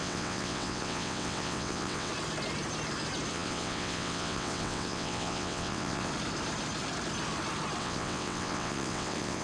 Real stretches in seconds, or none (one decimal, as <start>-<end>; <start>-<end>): 2.1-3.3; 6.1-7.8